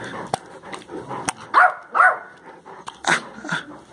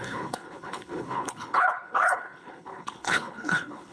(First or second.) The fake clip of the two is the second